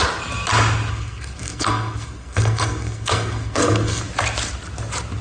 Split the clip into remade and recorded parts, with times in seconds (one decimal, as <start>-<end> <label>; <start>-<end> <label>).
0.0-0.9 recorded; 0.9-4.0 remade; 4.0-5.2 recorded